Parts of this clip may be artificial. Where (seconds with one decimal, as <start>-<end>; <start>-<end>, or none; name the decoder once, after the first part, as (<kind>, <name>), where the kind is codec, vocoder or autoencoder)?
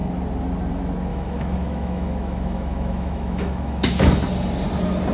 1.1-4.2 (autoencoder, DAC-VAE)